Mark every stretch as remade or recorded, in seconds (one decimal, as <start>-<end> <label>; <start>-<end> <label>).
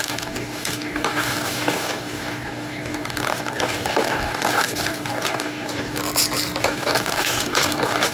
0.0-6.0 remade; 6.0-6.6 recorded; 6.6-8.1 remade